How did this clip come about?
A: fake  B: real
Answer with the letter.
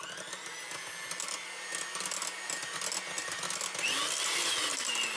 B